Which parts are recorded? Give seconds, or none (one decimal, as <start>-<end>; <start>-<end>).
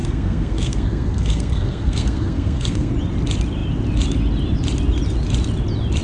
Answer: 2.9-6.0